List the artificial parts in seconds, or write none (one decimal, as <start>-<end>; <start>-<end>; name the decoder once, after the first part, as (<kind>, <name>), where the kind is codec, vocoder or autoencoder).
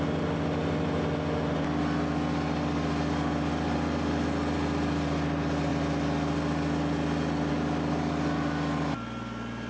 none